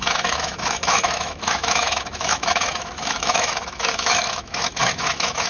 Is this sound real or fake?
fake